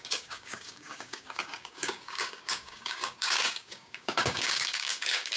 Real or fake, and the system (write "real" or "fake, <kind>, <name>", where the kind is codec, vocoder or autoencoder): fake, codec, DAC